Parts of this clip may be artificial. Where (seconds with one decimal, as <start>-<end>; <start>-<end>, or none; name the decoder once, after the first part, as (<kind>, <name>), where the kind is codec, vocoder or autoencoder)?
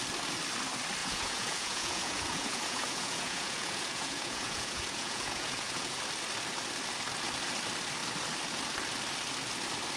1.0-6.0 (vocoder, Vocos)